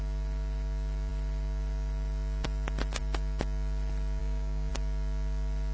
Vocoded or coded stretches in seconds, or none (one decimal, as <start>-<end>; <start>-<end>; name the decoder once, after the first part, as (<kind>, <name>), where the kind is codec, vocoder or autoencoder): 4.2-4.7 (codec, DAC)